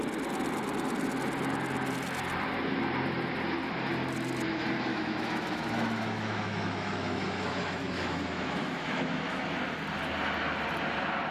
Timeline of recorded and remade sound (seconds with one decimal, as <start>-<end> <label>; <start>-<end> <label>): 0.0-4.9 recorded; 4.9-9.6 remade; 9.6-11.3 recorded